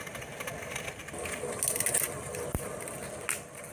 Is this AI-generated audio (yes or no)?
no